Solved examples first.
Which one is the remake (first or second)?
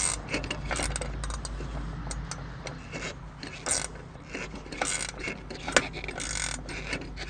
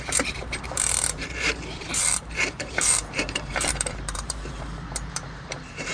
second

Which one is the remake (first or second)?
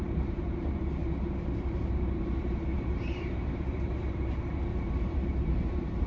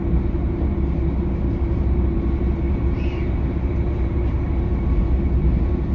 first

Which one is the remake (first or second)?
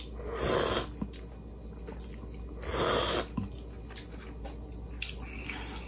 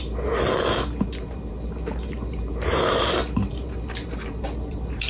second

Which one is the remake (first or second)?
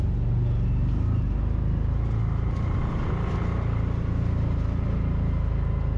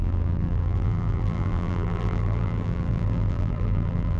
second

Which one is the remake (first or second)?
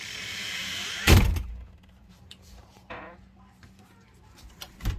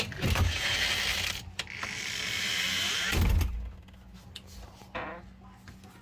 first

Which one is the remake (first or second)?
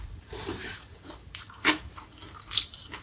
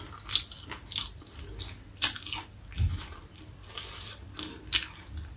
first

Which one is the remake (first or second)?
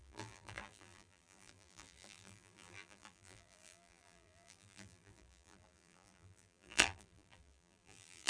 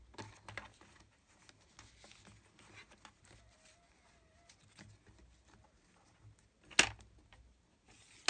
first